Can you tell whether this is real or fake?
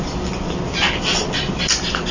real